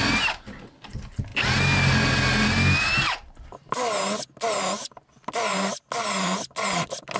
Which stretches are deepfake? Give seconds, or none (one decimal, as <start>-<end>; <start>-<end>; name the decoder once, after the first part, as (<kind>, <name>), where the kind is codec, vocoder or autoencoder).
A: none